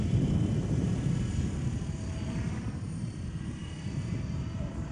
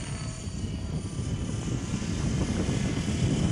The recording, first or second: second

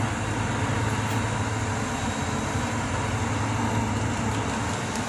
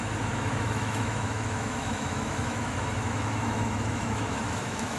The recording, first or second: first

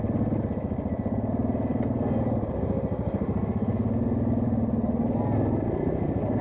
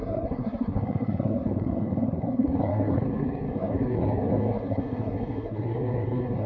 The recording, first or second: first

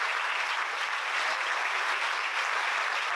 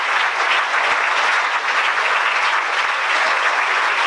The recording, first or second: first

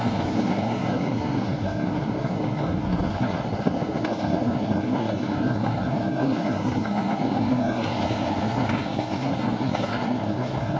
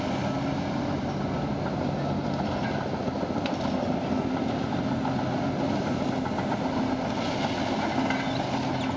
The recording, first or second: second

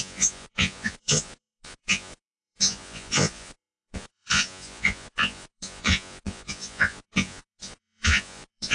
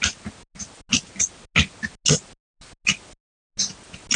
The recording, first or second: second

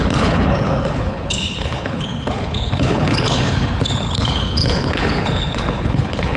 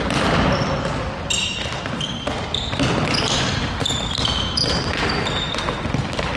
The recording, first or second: second